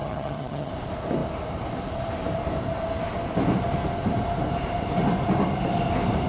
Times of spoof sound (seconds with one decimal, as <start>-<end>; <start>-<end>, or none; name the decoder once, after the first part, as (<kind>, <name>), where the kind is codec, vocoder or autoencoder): 0.0-0.7 (vocoder, HiFi-GAN)